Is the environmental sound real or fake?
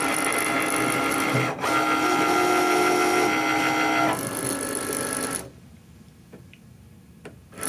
real